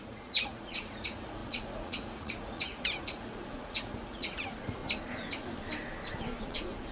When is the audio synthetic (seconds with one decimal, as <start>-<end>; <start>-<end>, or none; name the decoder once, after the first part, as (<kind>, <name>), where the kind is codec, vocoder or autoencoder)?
0.0-4.8 (vocoder, Vocos); 6.4-6.9